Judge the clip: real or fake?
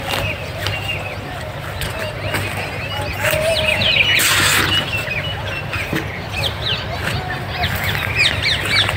real